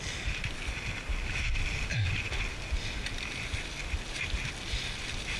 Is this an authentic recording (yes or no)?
yes